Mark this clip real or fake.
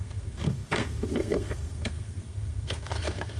fake